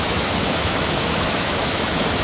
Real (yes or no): no